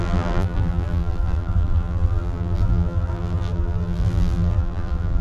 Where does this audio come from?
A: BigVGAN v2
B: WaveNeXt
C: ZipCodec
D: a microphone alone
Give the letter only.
A